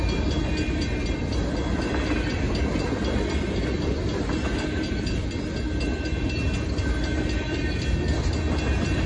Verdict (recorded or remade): recorded